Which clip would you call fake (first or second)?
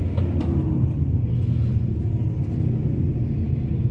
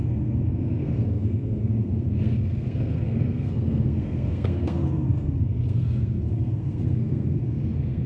second